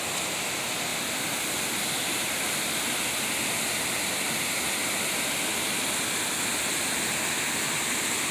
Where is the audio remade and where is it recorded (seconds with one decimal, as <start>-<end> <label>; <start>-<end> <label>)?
0.0-8.3 recorded